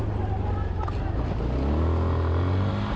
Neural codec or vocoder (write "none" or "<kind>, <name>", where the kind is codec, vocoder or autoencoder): none